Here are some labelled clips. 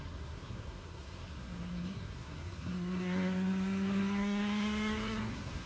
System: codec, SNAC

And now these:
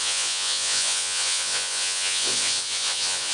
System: vocoder, Vocos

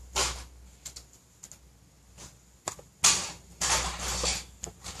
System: none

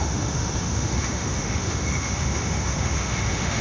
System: autoencoder, DAC-VAE